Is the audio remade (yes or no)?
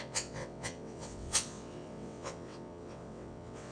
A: yes